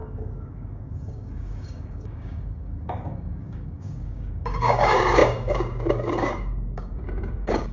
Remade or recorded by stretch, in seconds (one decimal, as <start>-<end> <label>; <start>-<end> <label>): 0.0-7.7 remade